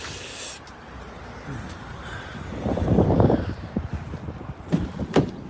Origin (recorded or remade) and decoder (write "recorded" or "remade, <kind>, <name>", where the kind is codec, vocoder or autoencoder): remade, vocoder, BigVGAN v2